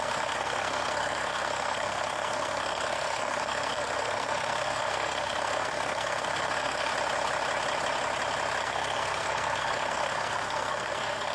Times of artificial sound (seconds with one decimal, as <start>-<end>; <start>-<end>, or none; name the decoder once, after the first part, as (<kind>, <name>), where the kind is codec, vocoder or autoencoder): 0.0-6.9 (codec, SNAC); 8.6-11.3